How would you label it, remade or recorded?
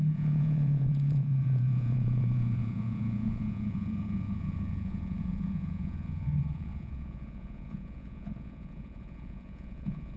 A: remade